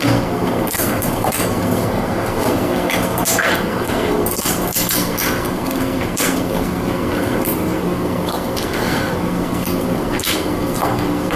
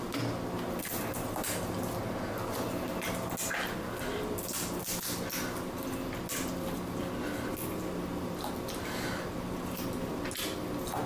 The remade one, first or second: first